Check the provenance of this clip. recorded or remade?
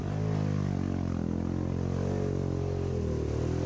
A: recorded